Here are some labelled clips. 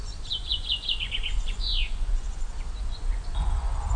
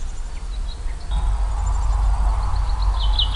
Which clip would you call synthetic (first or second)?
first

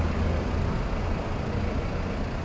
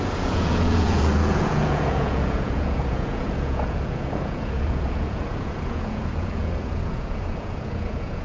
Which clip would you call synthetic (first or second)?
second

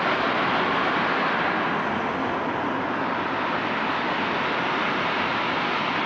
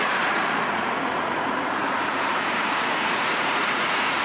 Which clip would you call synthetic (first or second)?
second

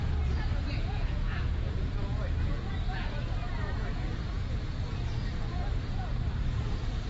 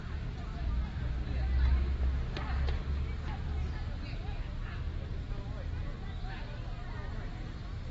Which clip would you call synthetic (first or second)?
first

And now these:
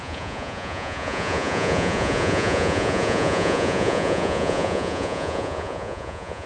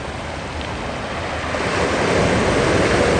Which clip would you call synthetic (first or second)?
first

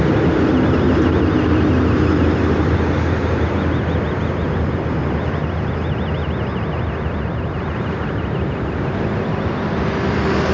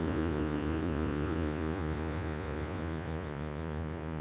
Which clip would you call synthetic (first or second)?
second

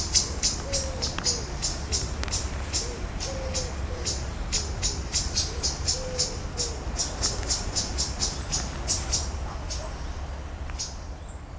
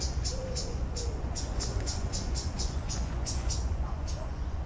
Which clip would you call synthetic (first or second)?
second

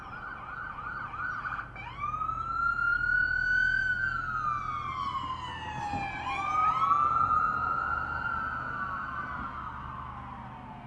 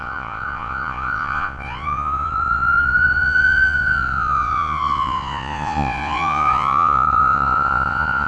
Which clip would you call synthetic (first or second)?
second